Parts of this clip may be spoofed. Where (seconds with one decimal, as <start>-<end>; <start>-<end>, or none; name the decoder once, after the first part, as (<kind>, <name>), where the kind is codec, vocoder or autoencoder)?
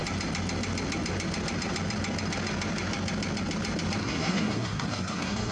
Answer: 4.0-5.5 (codec, SNAC)